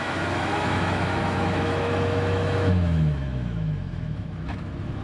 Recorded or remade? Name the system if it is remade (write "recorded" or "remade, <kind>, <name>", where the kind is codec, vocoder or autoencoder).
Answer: remade, autoencoder, DAC-VAE